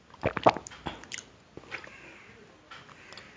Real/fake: real